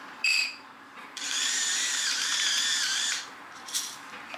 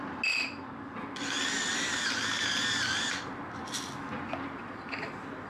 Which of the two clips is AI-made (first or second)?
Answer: first